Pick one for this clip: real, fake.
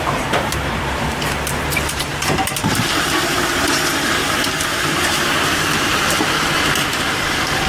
fake